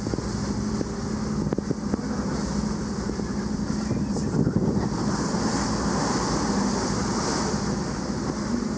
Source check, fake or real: real